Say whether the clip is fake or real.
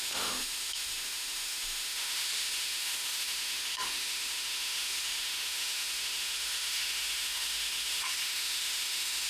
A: fake